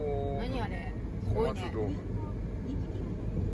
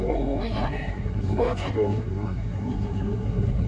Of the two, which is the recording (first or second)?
first